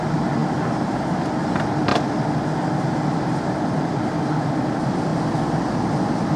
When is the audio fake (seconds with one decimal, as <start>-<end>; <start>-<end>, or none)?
none